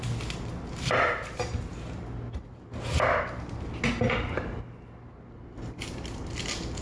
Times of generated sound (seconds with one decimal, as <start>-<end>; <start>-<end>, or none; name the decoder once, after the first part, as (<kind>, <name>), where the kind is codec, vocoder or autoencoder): none